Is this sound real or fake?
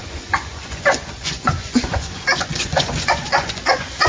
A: fake